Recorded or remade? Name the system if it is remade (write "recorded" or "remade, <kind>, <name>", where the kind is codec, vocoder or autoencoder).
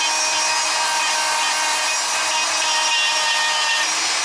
recorded